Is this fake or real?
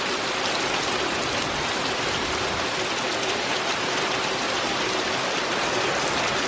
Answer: real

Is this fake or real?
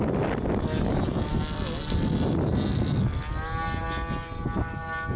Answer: real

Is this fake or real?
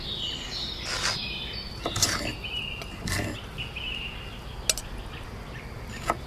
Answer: real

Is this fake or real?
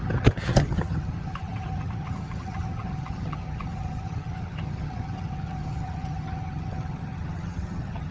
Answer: fake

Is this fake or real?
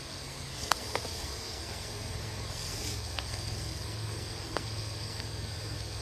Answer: fake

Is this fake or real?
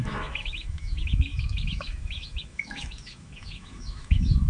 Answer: fake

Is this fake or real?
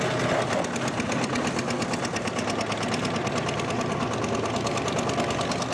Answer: real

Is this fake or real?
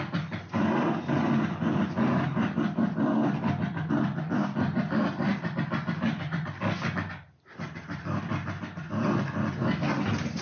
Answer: real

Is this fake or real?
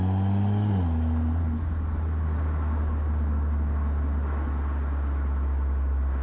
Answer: real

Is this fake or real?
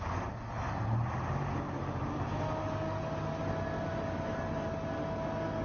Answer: real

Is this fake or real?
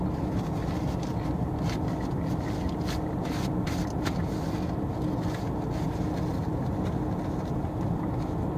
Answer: real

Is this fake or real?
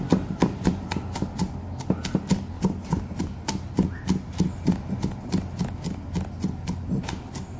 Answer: real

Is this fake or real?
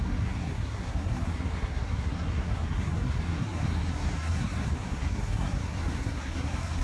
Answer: fake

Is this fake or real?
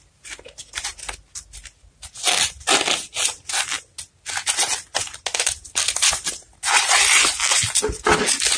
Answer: real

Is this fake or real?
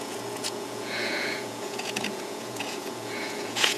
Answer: fake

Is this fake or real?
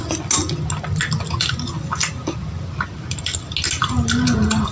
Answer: real